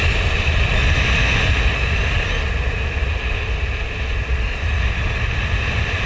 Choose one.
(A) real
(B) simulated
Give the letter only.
A